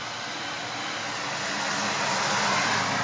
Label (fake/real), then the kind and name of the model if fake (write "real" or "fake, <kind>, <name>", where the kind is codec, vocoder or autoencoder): real